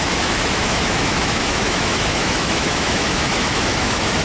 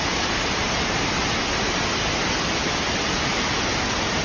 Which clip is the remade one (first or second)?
first